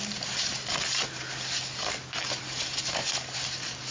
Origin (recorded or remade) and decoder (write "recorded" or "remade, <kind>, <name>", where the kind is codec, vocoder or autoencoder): recorded